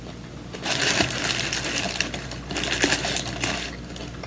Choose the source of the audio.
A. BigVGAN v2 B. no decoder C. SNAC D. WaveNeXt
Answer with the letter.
B